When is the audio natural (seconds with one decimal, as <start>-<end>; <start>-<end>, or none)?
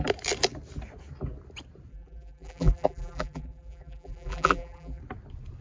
0.0-1.9; 5.0-5.6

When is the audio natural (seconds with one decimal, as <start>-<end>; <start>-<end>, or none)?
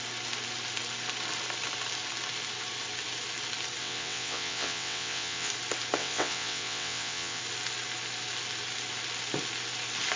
0.0-3.8; 5.5-6.0; 7.4-10.2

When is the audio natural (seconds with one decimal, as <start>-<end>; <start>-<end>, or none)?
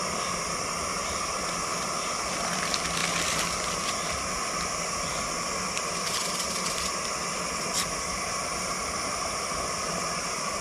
0.0-10.6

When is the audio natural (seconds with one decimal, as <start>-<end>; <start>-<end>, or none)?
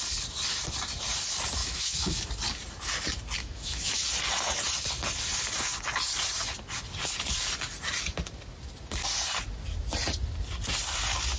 0.0-1.6; 2.3-3.4; 4.0-11.4